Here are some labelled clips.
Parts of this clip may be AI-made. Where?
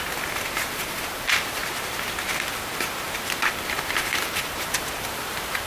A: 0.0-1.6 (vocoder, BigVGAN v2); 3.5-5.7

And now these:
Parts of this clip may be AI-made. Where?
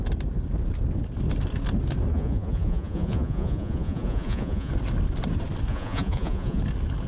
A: 2.1-4.7 (vocoder, Vocos); 5.7-6.6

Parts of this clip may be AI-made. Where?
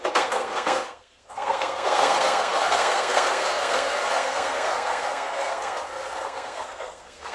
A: 0.0-7.3 (codec, SNAC)